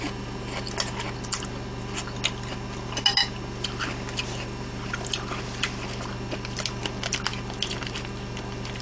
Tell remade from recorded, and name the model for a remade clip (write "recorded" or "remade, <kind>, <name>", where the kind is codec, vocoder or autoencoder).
recorded